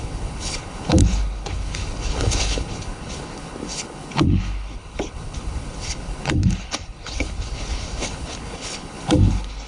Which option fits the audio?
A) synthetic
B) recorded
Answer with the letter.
A